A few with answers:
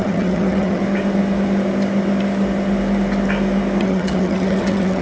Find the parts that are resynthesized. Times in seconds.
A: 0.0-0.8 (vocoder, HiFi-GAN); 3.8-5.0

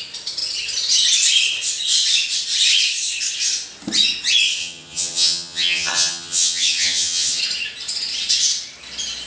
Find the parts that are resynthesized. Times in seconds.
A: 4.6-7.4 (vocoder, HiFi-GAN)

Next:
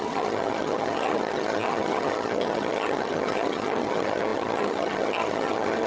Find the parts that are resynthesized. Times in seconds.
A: 0.0-5.9 (vocoder, HiFi-GAN)

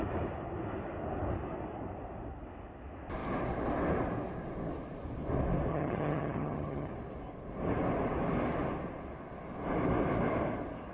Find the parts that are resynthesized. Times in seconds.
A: 5.7-6.9 (vocoder, HiFi-GAN)

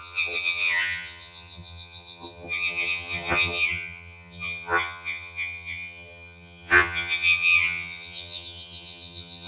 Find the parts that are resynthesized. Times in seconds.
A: 0.0-9.5 (vocoder, HiFi-GAN)

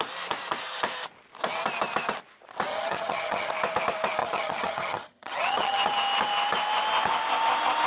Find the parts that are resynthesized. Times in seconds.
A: 2.7-3.5 (vocoder, HiFi-GAN); 4.2-5.8